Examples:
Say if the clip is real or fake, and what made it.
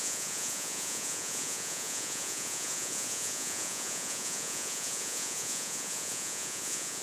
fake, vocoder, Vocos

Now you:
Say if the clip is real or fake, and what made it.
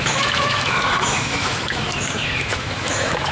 fake, autoencoder, DAC-VAE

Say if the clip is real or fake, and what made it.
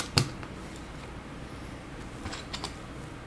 real